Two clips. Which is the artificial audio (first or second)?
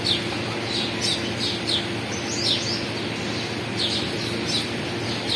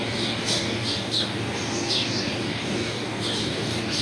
second